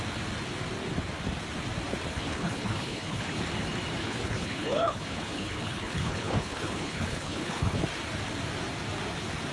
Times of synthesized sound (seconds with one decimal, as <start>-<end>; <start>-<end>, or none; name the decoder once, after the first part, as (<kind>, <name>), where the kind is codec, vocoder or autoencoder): 2.1-3.4 (codec, HILCodec); 4.0-7.8

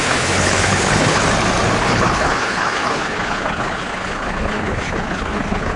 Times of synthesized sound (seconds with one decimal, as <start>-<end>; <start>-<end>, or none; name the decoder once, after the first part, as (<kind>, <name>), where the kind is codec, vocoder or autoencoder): 0.0-1.2 (codec, HILCodec); 1.8-5.8